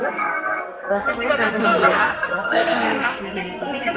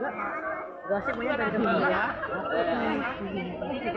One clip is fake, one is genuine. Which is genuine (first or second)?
second